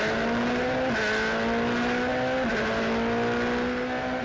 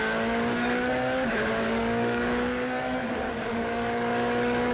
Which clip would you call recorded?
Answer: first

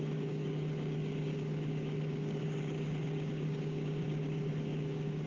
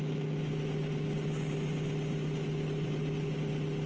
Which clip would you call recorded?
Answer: second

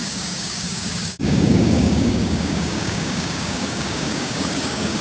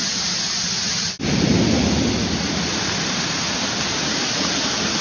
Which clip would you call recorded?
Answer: second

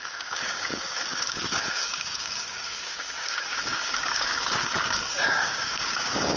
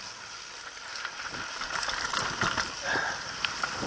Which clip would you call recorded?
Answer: second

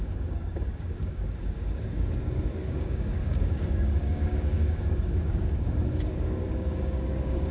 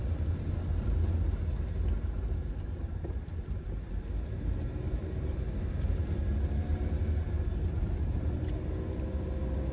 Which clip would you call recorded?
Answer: second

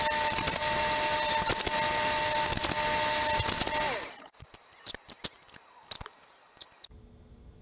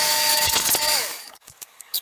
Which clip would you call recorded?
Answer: first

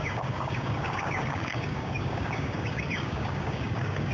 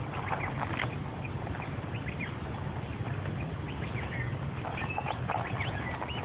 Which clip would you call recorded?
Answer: second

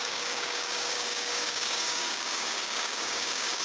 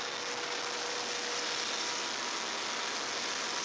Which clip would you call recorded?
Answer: second